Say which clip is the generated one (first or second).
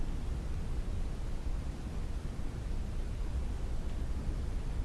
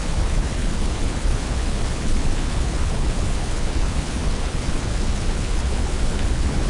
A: second